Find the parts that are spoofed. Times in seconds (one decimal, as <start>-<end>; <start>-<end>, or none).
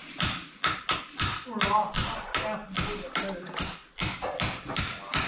none